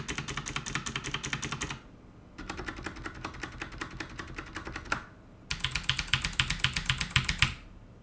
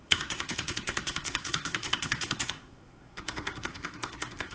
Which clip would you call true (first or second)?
first